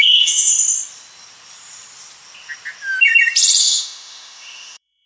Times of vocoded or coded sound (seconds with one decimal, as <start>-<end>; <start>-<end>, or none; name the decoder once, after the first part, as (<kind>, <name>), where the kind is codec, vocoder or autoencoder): 0.0-0.5 (autoencoder, DAC-VAE); 3.6-5.1